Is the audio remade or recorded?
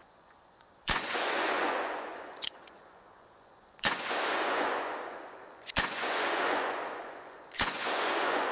remade